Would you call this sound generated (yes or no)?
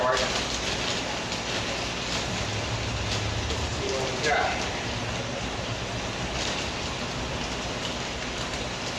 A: no